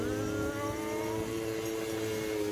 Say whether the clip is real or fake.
real